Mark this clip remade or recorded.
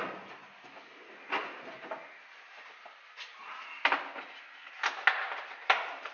recorded